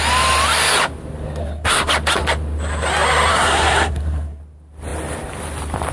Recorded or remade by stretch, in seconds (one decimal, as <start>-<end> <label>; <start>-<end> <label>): 0.0-1.4 recorded; 1.4-1.9 remade; 1.9-3.3 recorded; 3.3-4.4 remade; 4.4-5.9 recorded